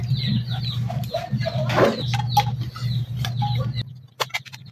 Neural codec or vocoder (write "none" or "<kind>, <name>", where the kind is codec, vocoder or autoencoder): none